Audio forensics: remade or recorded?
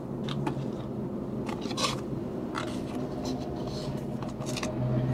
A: recorded